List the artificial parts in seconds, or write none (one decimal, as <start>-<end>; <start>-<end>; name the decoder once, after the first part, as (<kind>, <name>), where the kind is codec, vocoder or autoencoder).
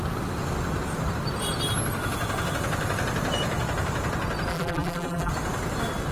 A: 4.5-5.3 (vocoder, BigVGAN v2)